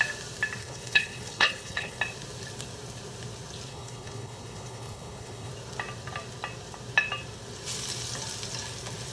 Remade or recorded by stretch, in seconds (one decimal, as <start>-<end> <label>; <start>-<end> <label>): 0.0-0.6 recorded; 0.6-2.0 remade; 2.0-3.7 recorded; 3.7-5.5 remade; 5.5-9.1 recorded